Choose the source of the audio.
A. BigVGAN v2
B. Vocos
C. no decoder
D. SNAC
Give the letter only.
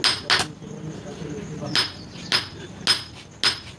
C